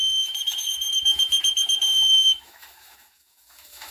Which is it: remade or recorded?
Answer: remade